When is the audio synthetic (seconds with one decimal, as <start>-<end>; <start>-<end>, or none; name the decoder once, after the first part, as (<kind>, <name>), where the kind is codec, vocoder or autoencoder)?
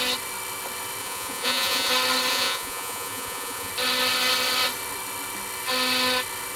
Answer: 1.0-1.9 (vocoder, Vocos); 2.3-3.7